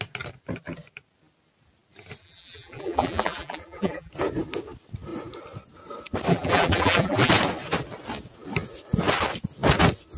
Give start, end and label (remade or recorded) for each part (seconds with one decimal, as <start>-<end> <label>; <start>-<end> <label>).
0.0-2.2 recorded; 2.2-4.1 remade; 4.1-6.3 recorded; 6.3-7.3 remade; 7.3-10.2 recorded